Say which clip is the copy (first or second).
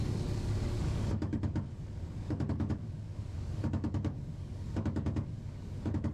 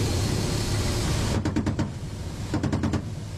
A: first